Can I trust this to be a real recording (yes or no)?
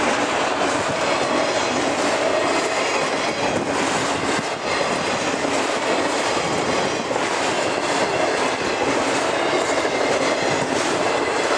yes